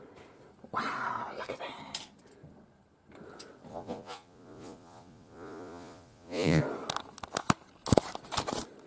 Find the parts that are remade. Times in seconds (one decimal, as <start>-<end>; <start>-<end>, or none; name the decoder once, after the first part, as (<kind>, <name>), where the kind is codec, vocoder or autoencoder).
3.7-6.6 (vocoder, Vocos)